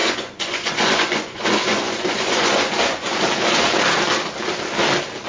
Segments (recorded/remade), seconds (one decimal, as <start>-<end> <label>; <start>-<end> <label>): 0.0-3.2 remade; 3.2-5.3 recorded